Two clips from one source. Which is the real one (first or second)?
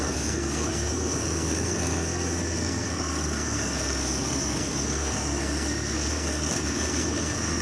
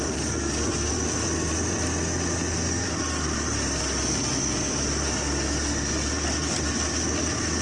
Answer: second